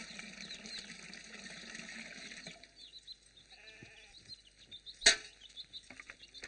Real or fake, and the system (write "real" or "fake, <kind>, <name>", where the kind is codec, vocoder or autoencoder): real